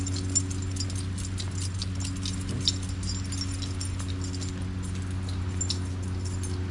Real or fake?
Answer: real